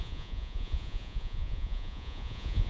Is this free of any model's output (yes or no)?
no